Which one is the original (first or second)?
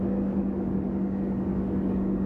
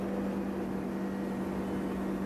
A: second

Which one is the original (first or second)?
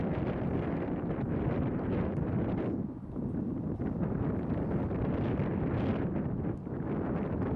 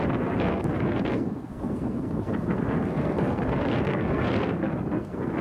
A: first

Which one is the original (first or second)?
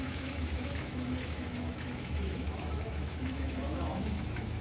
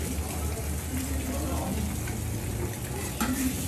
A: second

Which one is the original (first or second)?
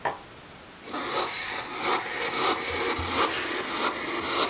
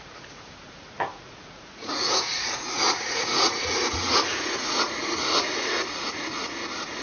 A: first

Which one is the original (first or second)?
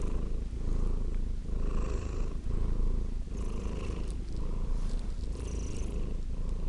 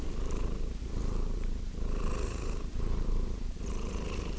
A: first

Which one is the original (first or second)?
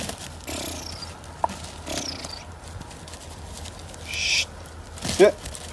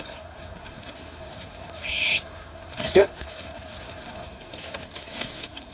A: first